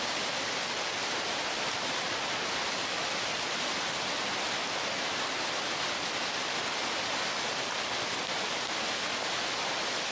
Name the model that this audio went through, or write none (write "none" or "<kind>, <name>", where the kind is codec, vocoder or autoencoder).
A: none